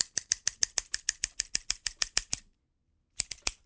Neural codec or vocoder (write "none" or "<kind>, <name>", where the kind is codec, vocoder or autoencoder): none